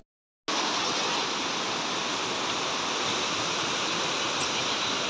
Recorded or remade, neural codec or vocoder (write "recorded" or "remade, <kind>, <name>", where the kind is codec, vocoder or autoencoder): recorded